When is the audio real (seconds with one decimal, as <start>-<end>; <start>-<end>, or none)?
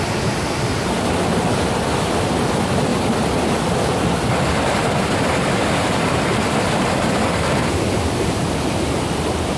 2.9-5.1